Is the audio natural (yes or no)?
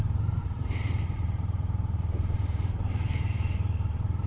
no